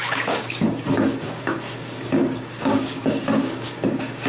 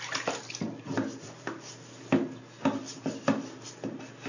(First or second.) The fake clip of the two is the first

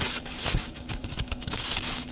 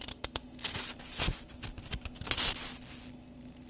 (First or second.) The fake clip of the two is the first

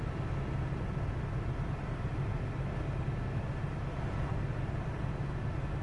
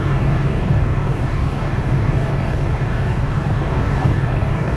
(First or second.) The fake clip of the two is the second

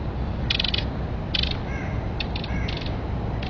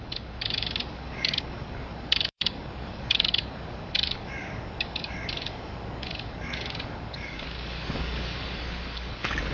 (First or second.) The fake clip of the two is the second